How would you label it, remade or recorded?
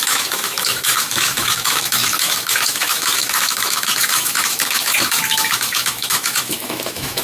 remade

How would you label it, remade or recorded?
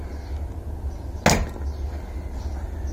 recorded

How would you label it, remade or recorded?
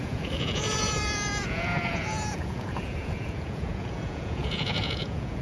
remade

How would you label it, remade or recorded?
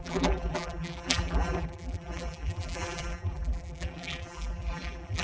remade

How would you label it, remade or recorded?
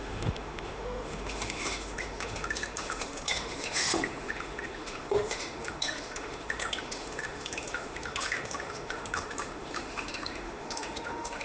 remade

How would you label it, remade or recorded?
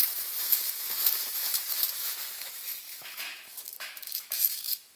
remade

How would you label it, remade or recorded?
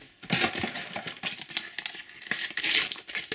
recorded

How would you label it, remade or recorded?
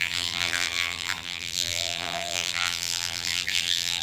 remade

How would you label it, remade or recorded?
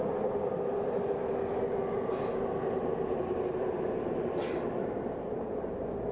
recorded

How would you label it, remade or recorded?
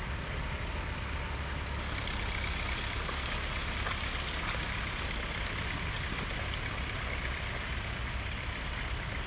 recorded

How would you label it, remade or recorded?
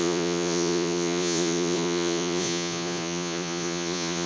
remade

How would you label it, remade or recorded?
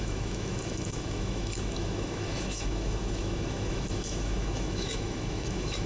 remade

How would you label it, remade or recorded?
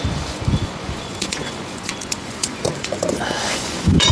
remade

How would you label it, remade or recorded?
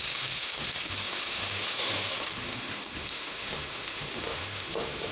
remade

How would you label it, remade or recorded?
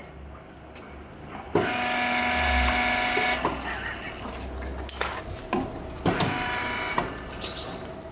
recorded